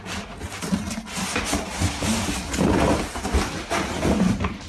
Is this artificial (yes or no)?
no